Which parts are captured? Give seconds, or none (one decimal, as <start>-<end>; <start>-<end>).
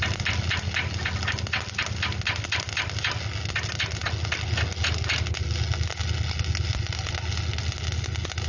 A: 0.0-8.5